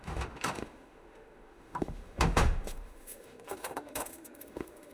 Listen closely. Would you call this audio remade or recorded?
remade